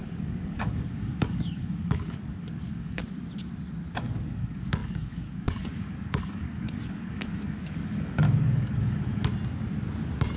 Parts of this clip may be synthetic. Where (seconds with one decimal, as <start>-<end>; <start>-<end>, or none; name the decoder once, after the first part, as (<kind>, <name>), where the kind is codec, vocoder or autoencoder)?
0.0-3.0 (codec, DAC); 4.0-9.3